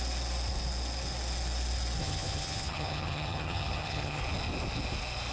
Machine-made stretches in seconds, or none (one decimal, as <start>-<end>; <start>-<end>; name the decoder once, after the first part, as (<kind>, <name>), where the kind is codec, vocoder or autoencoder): 2.0-4.2 (vocoder, HiFi-GAN)